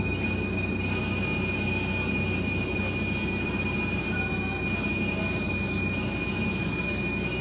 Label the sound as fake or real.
real